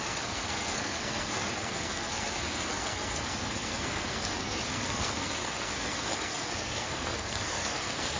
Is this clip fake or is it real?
fake